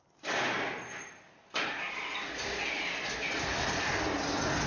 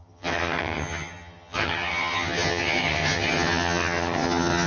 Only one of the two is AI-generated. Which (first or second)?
second